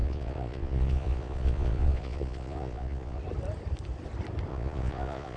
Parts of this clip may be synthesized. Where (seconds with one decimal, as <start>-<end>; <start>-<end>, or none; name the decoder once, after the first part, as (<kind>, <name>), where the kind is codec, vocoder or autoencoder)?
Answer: 0.0-3.2 (vocoder, Vocos); 4.5-5.4